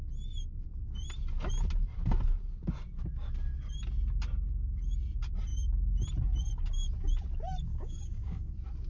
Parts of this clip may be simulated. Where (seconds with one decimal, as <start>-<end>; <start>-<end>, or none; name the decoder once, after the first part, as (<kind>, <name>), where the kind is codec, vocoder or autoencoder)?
7.7-8.5 (codec, DAC)